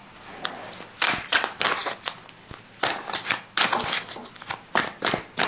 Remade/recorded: recorded